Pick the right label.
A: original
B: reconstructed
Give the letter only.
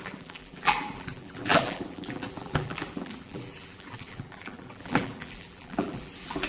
B